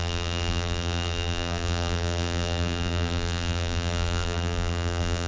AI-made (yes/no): yes